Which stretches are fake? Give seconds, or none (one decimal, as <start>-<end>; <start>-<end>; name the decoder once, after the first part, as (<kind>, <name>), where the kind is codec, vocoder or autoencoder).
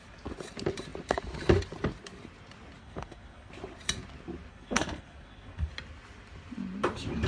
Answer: 2.8-3.5 (codec, SNAC); 4.5-5.7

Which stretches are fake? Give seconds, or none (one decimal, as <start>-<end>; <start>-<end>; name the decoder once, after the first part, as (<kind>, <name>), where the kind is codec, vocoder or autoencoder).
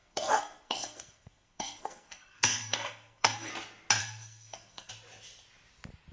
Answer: 0.0-3.5 (codec, SNAC); 4.0-4.9